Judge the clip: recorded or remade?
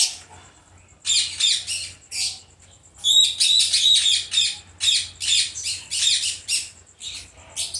recorded